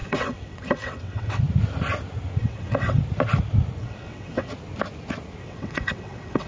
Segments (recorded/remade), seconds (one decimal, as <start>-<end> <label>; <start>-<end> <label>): 0.0-1.4 remade; 1.4-2.4 recorded; 2.4-3.0 remade; 3.0-3.8 recorded; 3.8-4.5 remade; 4.5-5.4 recorded; 5.4-6.5 remade